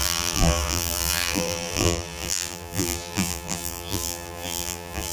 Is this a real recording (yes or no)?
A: no